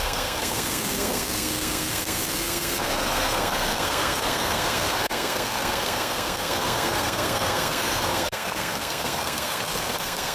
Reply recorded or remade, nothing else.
remade